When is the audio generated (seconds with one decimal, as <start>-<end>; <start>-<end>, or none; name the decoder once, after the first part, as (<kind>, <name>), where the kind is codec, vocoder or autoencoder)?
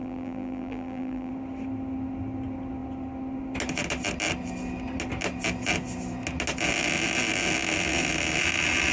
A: 0.0-1.3 (vocoder, BigVGAN v2)